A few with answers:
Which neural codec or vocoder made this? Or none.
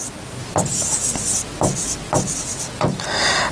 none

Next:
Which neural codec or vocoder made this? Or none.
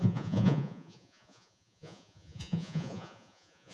vocoder, Vocos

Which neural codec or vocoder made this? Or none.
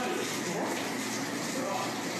none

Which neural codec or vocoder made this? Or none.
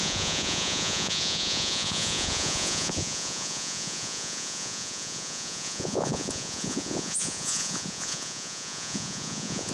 vocoder, Vocos